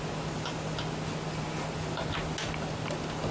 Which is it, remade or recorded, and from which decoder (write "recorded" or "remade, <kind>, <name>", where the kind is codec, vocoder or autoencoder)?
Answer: recorded